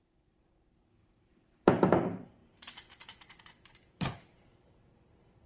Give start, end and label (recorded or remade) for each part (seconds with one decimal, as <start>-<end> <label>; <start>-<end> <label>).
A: 0.0-5.5 remade